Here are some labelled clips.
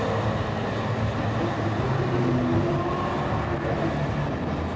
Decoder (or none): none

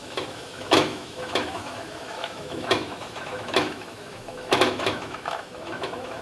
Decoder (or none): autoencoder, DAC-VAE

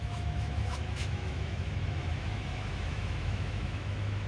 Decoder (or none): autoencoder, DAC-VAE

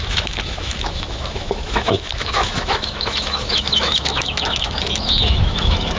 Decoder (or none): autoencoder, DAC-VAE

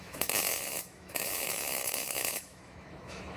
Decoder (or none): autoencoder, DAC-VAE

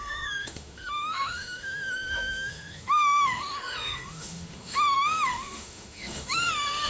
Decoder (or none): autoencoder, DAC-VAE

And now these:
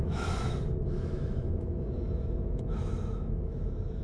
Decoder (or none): autoencoder, DAC-VAE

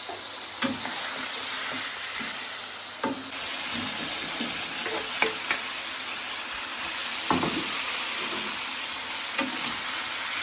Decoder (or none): none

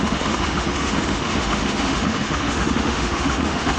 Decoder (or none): autoencoder, DAC-VAE